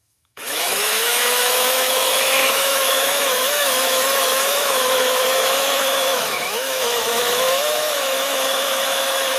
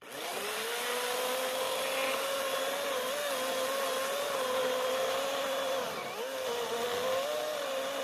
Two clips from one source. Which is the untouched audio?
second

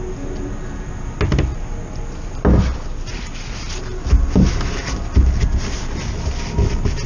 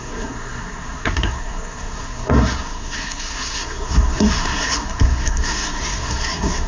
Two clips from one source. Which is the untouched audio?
first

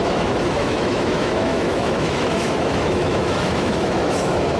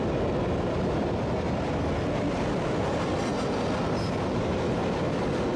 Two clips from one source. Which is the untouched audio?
second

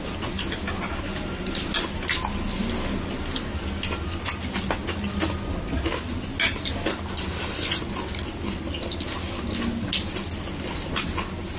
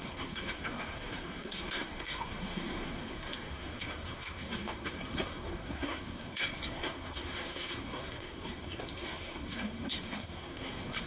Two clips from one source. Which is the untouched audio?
first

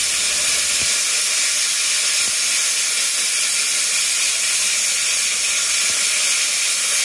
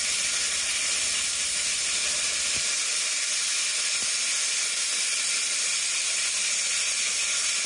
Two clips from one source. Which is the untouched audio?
first